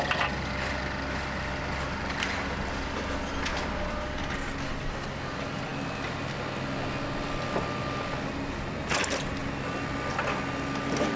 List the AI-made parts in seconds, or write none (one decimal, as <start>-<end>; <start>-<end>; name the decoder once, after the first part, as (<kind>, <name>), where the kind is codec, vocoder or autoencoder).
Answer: none